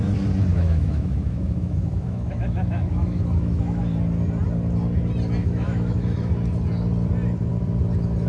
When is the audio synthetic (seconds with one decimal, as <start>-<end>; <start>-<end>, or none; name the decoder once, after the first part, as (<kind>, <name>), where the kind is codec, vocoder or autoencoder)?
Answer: 0.5-3.8 (autoencoder, DAC-VAE); 5.4-6.3